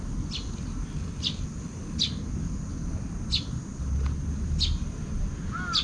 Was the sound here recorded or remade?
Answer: recorded